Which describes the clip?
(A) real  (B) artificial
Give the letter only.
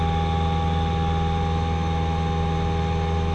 A